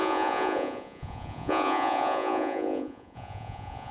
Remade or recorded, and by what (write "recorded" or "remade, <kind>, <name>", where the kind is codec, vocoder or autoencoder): remade, vocoder, Vocos